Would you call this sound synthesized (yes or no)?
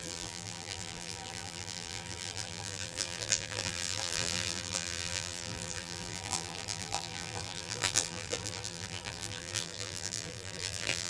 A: yes